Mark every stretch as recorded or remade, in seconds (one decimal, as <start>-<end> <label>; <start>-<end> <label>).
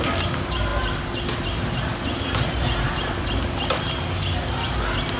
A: 0.0-5.2 recorded